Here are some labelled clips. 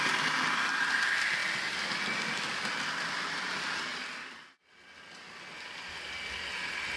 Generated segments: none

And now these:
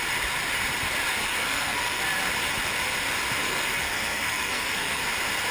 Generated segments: 1.2-2.0 (codec, SNAC); 3.4-5.0

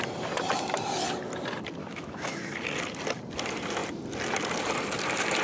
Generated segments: 1.8-2.5 (autoencoder, DAC-VAE)

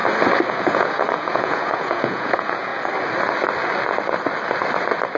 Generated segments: 0.5-2.7 (vocoder, Vocos)